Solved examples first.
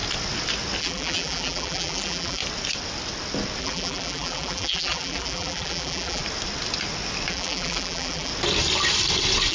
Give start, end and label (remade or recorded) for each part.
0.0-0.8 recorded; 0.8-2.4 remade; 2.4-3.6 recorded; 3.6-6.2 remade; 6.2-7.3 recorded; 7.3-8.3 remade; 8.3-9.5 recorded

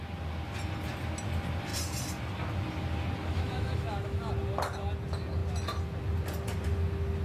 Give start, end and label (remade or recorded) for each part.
0.0-3.3 recorded; 3.3-4.3 remade; 4.3-7.2 recorded

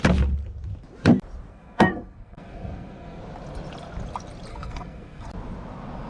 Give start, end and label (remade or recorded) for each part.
0.0-1.5 recorded; 1.5-3.2 remade; 3.2-4.5 recorded; 4.5-5.3 remade; 5.3-6.1 recorded

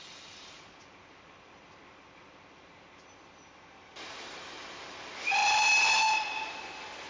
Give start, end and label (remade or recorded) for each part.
0.0-7.1 recorded

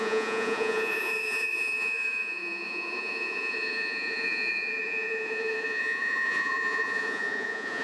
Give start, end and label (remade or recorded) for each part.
0.0-7.8 remade

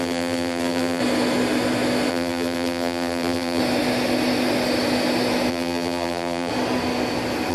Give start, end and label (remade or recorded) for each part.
0.0-1.0 remade; 1.0-2.1 recorded; 2.1-3.6 remade; 3.6-5.5 recorded; 5.5-6.5 remade; 6.5-7.5 recorded

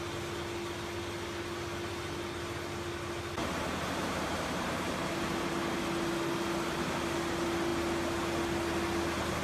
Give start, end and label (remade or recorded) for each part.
0.0-3.4 recorded; 3.4-5.1 remade; 5.1-9.4 recorded

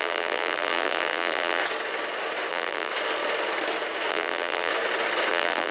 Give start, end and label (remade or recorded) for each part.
0.0-1.6 remade; 1.6-2.5 recorded; 2.5-2.9 remade; 2.9-4.1 recorded; 4.1-4.7 remade; 4.7-5.3 recorded; 5.3-5.7 remade